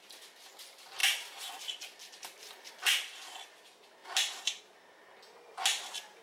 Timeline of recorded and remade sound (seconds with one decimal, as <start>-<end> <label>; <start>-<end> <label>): 0.0-6.2 recorded